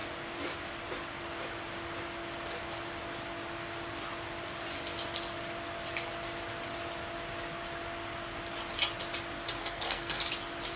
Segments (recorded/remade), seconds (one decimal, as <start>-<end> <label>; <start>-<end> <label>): 0.0-9.6 recorded; 9.6-10.2 remade; 10.2-10.8 recorded